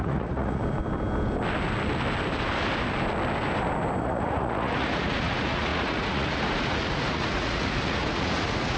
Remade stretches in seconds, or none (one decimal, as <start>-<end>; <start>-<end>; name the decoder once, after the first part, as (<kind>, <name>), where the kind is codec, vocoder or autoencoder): 0.0-0.6 (vocoder, Vocos); 4.0-8.8